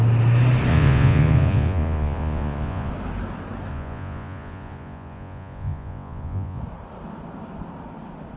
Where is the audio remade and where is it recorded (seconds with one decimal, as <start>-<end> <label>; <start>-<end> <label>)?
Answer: 0.0-0.7 recorded; 0.7-2.9 remade; 2.9-3.7 recorded; 3.7-6.6 remade; 6.6-8.4 recorded

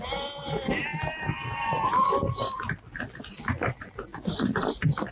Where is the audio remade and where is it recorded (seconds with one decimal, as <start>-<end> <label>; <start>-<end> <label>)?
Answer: 0.0-5.1 recorded

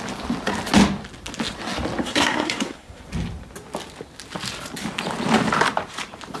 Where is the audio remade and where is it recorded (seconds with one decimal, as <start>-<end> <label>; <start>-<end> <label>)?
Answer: 0.0-2.0 recorded; 2.0-3.0 remade; 3.0-6.4 recorded

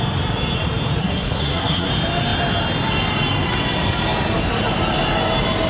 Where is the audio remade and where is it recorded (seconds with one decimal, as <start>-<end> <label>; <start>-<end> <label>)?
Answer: 0.0-1.0 recorded; 1.0-1.9 remade; 1.9-5.7 recorded

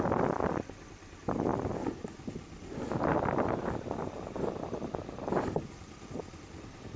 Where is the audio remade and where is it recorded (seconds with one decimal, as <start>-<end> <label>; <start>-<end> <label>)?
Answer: 0.0-7.0 recorded

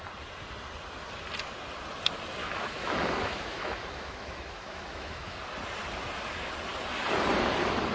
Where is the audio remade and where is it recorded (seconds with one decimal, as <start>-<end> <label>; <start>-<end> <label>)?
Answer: 0.0-2.4 recorded; 2.4-5.4 remade; 5.4-7.9 recorded

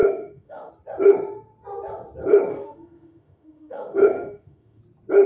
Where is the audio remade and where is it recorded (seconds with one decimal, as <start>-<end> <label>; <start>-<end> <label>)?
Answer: 0.0-0.7 remade; 0.7-2.5 recorded; 2.5-4.8 remade; 4.8-5.3 recorded

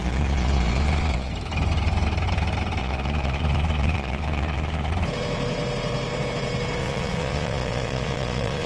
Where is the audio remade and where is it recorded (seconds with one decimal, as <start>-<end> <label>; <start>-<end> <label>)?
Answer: 0.0-1.3 remade; 1.3-2.8 recorded; 2.8-4.9 remade; 4.9-6.8 recorded; 6.8-8.7 remade